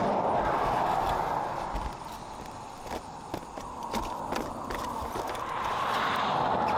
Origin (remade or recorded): recorded